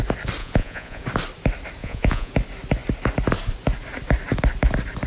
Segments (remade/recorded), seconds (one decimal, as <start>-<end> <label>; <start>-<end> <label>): 0.0-0.4 recorded; 0.4-1.0 remade; 1.0-1.8 recorded; 1.8-2.3 remade; 2.3-5.1 recorded